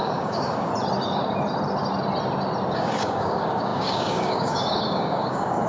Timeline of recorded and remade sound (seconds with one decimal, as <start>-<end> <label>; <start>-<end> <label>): 0.0-0.7 remade; 0.7-2.7 recorded; 2.7-5.7 remade